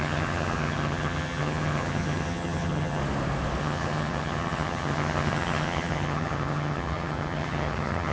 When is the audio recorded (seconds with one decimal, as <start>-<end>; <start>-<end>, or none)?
3.0-3.6